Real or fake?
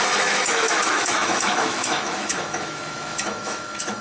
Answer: fake